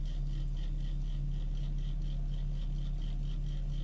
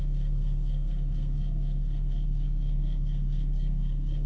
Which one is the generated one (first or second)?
second